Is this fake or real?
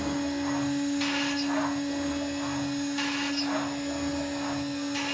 real